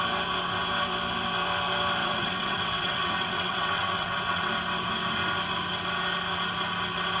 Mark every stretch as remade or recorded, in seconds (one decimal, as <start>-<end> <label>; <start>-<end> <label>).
0.0-2.0 recorded; 2.0-4.5 remade; 4.5-7.2 recorded